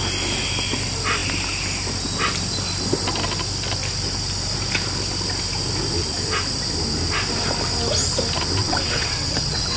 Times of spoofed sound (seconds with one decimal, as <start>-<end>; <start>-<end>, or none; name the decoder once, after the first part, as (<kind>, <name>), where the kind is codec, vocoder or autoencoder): 8.6-9.8 (vocoder, WaveNeXt)